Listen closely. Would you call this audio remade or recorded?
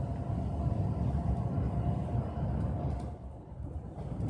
recorded